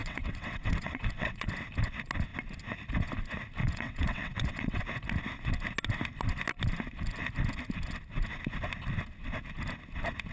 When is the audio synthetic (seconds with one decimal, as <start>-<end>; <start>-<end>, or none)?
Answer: 0.0-1.5; 3.6-4.8